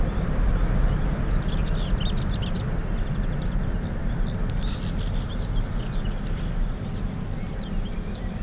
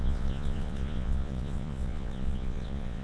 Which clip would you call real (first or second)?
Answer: first